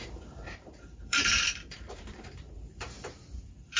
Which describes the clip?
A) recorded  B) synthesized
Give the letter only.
B